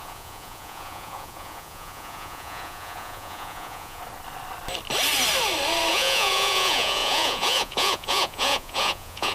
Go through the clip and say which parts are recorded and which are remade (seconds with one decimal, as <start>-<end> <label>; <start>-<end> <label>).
0.0-4.0 remade; 4.0-5.9 recorded; 5.9-9.3 remade